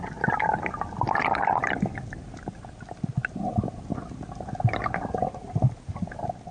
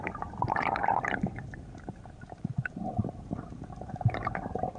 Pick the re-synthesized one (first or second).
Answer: second